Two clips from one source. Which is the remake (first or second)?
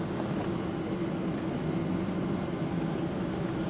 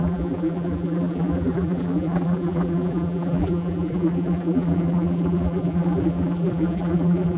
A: second